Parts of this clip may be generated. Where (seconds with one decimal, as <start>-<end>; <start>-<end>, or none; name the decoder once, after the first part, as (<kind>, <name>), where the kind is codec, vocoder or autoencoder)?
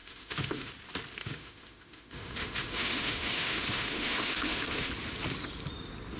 0.0-0.7 (autoencoder, DAC-VAE); 1.2-4.9